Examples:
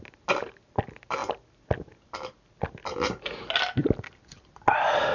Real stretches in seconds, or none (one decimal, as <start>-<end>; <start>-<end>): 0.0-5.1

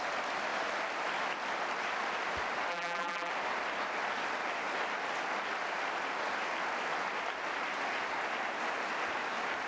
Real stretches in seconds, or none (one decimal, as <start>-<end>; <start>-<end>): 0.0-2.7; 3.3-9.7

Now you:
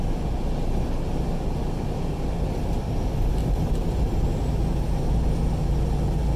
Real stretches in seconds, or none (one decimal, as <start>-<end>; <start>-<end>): 0.0-3.4; 4.5-6.4

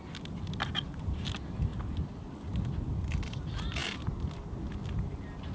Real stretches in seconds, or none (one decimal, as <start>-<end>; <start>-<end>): 0.0-5.5

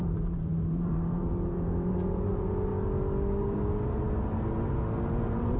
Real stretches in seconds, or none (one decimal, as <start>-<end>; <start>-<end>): 2.7-3.4